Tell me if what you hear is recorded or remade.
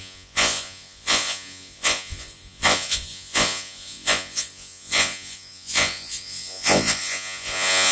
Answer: remade